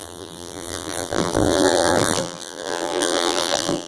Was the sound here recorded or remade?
remade